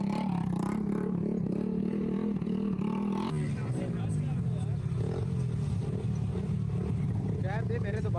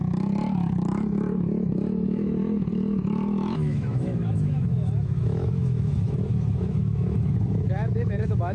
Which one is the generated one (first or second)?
second